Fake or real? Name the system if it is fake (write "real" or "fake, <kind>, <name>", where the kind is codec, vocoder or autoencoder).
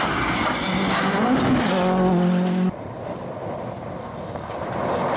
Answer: real